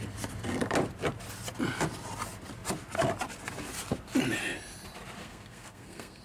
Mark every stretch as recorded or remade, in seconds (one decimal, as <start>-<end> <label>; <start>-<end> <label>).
0.0-5.2 recorded; 5.2-6.2 remade